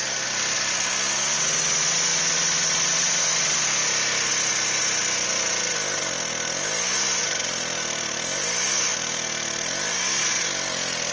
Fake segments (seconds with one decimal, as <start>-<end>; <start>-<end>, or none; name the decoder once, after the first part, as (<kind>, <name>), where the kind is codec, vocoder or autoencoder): none